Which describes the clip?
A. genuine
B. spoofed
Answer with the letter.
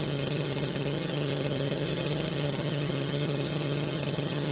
B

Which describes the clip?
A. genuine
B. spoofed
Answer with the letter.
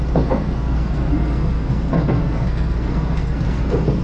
B